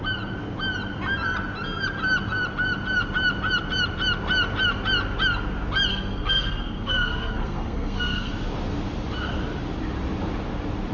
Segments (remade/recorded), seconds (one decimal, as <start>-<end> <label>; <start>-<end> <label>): 0.0-5.9 recorded; 5.9-8.3 remade; 8.3-10.9 recorded